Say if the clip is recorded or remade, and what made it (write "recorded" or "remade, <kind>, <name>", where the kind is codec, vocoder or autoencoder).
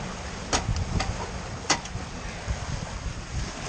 recorded